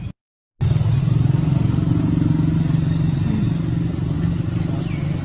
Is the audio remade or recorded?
recorded